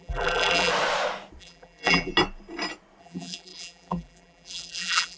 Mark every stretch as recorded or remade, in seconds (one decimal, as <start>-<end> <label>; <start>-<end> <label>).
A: 0.0-0.7 remade; 0.7-1.4 recorded; 1.4-2.1 remade; 2.1-3.0 recorded; 3.0-5.2 remade